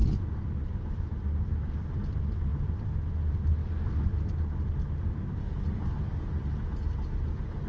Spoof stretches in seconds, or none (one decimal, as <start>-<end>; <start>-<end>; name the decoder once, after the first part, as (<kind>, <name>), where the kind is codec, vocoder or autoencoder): none